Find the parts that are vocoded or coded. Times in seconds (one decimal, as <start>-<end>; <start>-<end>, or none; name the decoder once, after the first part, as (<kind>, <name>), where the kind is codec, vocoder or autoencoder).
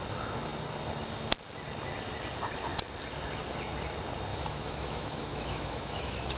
4.3-6.4 (autoencoder, DAC-VAE)